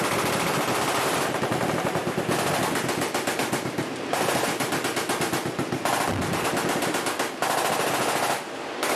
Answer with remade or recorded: recorded